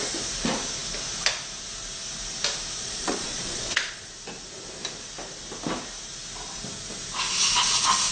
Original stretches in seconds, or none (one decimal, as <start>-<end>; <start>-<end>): 0.0-2.8; 4.1-8.1